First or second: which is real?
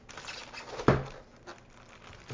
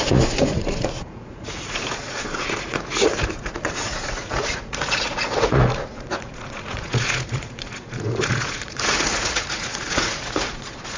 first